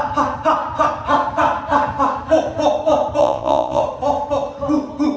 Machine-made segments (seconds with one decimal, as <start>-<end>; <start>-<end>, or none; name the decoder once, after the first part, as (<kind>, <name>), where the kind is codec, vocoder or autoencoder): 3.2-3.8 (vocoder, Vocos)